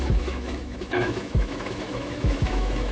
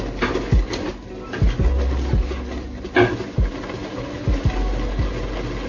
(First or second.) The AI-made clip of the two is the first